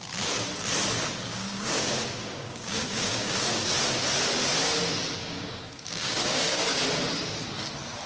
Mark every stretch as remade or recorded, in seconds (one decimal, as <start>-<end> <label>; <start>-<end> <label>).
0.0-1.3 recorded; 1.3-3.7 remade; 3.7-5.2 recorded; 5.2-6.8 remade; 6.8-8.1 recorded